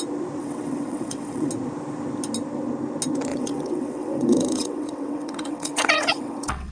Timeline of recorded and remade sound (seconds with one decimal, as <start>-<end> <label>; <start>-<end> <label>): 0.0-0.4 recorded; 0.4-1.5 remade; 1.5-3.3 recorded; 3.3-6.7 remade